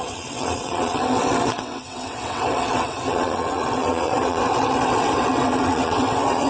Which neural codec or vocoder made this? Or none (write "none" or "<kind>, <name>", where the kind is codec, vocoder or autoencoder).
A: vocoder, WaveNeXt